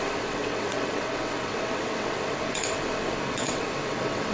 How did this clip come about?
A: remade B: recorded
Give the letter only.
A